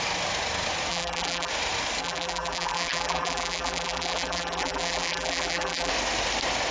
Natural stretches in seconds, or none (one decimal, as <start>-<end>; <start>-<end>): 0.0-0.9; 1.5-2.0; 5.9-6.7